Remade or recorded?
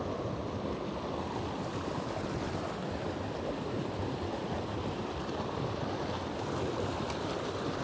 recorded